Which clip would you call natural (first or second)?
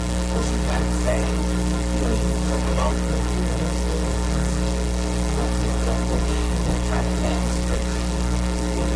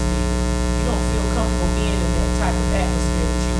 second